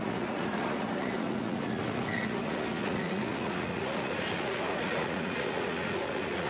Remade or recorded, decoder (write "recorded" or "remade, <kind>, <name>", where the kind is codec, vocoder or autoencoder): remade, vocoder, Vocos